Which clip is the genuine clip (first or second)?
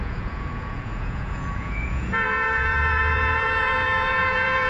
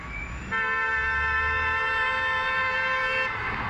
second